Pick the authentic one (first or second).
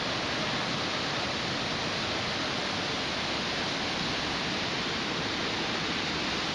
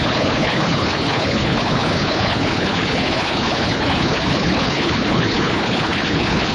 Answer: first